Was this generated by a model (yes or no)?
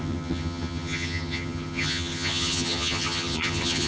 yes